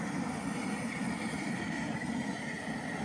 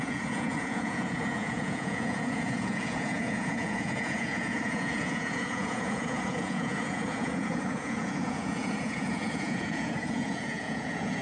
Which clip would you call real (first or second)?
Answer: first